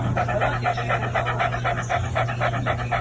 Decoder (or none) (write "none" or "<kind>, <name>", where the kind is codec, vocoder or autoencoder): none